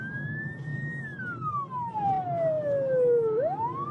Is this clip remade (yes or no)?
no